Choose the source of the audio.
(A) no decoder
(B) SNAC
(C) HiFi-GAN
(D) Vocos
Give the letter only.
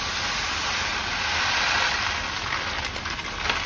A